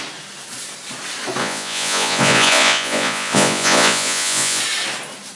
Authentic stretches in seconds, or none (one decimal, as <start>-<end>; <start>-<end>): 0.0-1.4; 4.6-5.4